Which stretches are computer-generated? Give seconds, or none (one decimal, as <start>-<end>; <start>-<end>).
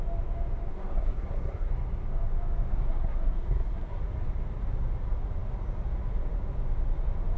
0.7-1.7; 2.7-4.0